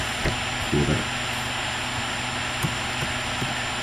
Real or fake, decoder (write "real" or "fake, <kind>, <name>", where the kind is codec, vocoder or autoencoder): real